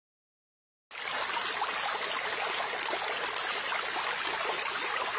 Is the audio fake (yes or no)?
no